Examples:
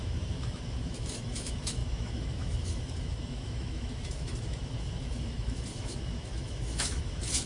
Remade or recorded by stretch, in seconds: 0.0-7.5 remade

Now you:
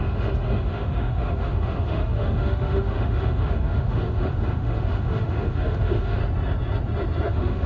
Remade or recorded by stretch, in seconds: 0.0-6.2 remade; 6.2-7.3 recorded; 7.3-7.7 remade

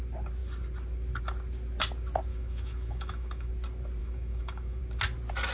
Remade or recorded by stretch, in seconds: 0.0-2.3 recorded; 2.3-3.5 remade; 3.5-4.0 recorded; 4.0-4.8 remade; 4.8-5.5 recorded

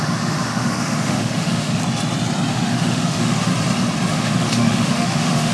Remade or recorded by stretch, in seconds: 0.0-1.8 remade; 1.8-2.5 recorded; 2.5-3.5 remade; 3.5-4.1 recorded; 4.1-5.5 remade

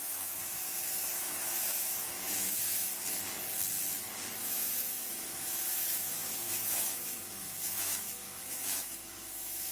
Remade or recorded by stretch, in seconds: 0.0-2.9 remade; 2.9-4.4 recorded; 4.4-9.7 remade

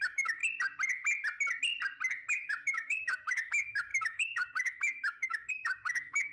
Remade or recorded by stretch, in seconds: 0.0-0.4 remade; 0.4-2.3 recorded; 2.3-6.3 remade

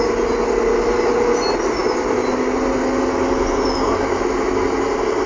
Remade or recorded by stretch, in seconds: 0.0-5.3 recorded

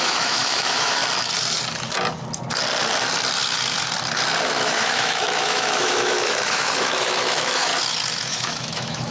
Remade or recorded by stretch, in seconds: 0.0-1.0 remade; 1.0-4.4 recorded; 4.4-7.7 remade; 7.7-8.3 recorded; 8.3-9.1 remade